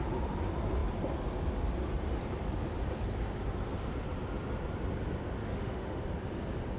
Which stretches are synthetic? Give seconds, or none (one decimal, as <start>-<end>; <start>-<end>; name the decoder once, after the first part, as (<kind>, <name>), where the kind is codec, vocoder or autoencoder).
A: 5.4-6.0 (autoencoder, DAC-VAE)